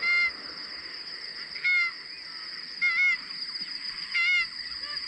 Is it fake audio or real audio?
real